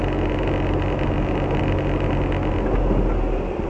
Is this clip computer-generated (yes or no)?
no